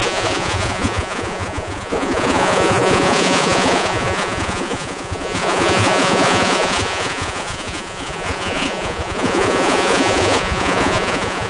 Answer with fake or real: fake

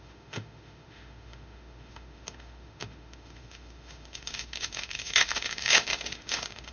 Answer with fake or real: fake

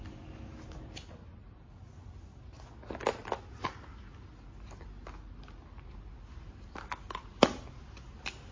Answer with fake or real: real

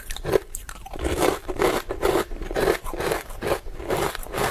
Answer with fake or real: fake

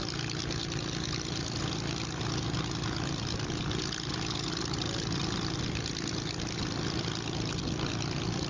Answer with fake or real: real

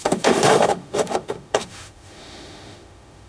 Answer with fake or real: fake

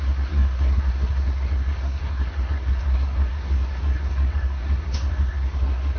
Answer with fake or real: fake